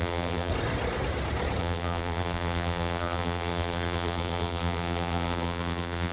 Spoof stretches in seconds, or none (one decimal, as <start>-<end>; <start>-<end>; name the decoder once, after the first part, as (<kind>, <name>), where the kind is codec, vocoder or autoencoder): 0.0-0.5 (vocoder, BigVGAN v2); 1.6-6.1